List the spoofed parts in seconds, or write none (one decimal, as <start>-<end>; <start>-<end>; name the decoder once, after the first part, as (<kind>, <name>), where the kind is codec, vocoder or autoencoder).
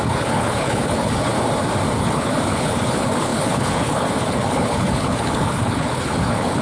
0.0-1.3 (codec, HILCodec); 2.0-6.6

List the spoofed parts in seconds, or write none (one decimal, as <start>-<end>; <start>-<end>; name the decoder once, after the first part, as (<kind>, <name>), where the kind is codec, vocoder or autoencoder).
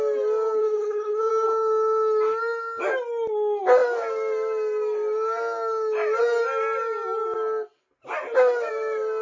0.6-1.3 (codec, HILCodec)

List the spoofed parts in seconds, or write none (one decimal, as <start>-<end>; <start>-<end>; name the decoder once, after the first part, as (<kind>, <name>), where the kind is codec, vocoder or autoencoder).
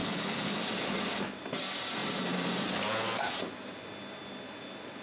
0.0-0.6 (codec, HILCodec)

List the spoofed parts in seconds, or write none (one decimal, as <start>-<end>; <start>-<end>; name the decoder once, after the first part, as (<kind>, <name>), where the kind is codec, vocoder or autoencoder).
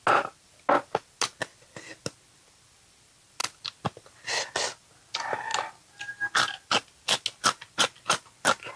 none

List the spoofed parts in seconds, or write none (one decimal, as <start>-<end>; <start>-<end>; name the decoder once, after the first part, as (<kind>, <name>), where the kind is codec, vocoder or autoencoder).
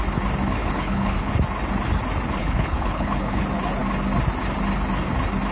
0.6-1.3 (codec, HILCodec); 2.4-3.4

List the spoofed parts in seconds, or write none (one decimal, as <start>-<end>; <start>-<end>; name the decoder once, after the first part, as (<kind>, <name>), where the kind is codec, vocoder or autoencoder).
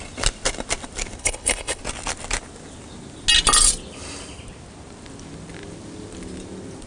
1.2-1.8 (codec, HILCodec)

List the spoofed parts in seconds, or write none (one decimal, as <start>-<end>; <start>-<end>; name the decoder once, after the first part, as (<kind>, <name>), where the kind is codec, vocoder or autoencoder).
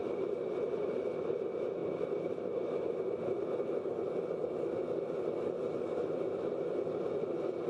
none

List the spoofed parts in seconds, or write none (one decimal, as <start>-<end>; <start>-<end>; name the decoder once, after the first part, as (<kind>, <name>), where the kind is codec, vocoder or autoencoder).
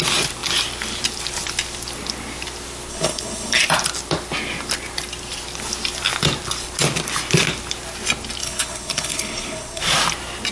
2.9-3.6 (codec, HILCodec); 8.4-9.8